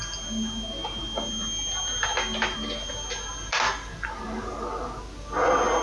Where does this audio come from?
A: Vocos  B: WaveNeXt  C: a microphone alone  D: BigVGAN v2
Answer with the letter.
C